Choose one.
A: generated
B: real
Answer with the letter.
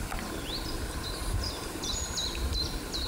B